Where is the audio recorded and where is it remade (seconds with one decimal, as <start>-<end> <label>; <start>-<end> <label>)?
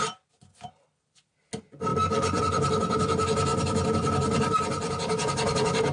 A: 0.0-1.9 recorded; 1.9-2.4 remade; 2.4-5.9 recorded